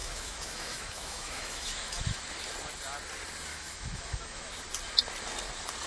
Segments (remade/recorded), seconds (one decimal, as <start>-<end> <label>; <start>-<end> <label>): 0.0-2.2 remade; 2.2-3.5 recorded; 3.5-4.5 remade; 4.5-5.9 recorded